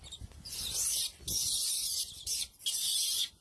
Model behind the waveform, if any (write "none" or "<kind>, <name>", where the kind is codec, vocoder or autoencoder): none